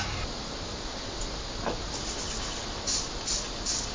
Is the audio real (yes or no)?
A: yes